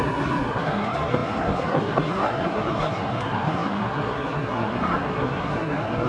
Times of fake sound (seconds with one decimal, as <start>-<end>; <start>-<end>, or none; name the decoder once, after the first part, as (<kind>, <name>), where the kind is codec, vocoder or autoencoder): 0.0-6.1 (codec, SNAC)